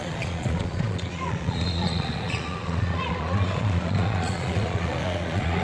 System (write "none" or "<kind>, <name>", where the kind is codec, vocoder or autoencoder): vocoder, Vocos